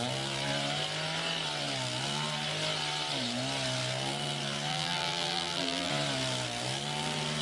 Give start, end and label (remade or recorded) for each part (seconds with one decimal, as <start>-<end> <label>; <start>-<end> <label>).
0.0-4.7 recorded; 4.7-5.9 remade; 5.9-7.4 recorded